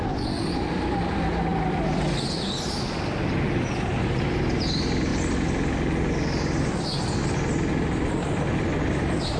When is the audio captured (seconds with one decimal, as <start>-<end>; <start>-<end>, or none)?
0.0-9.4